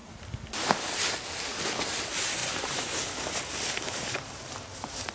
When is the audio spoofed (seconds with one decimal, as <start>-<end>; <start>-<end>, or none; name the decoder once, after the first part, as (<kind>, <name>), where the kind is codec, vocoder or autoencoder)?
2.4-3.4 (vocoder, BigVGAN v2)